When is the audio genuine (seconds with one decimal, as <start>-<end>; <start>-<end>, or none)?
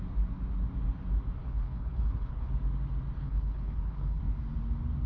0.0-1.4; 2.5-3.2; 4.2-5.1